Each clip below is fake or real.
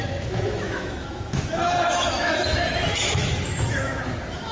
fake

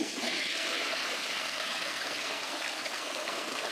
fake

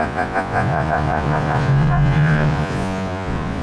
fake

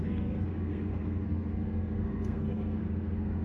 fake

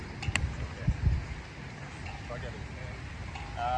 real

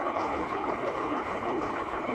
fake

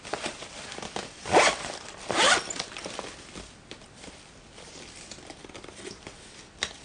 fake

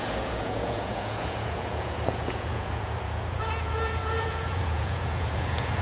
fake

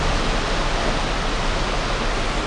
real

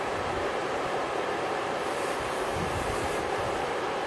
fake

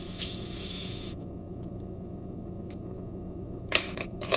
fake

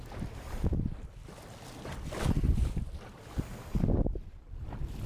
real